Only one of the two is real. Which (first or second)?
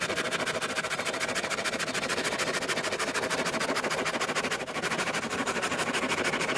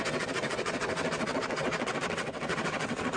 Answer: first